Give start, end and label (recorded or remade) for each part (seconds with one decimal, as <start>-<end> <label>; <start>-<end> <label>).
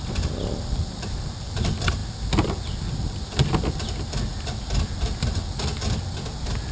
0.0-6.7 recorded